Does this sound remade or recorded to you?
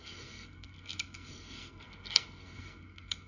remade